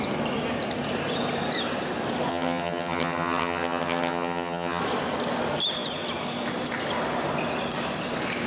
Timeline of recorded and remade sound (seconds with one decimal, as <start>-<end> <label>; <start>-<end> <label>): 0.0-2.3 recorded; 2.3-4.8 remade; 4.8-8.5 recorded